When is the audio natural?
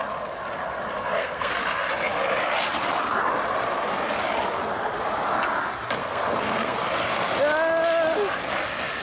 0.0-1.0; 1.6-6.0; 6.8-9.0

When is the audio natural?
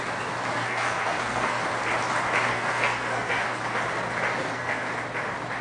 0.0-0.5; 1.6-2.5; 3.6-4.4; 4.9-5.6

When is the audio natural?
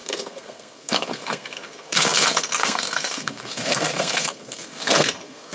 none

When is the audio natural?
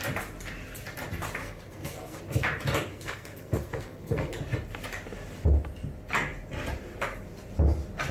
0.0-1.4; 2.2-2.9; 4.3-8.1